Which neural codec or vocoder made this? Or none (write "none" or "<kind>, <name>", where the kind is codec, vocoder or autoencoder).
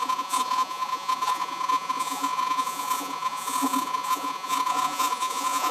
vocoder, Vocos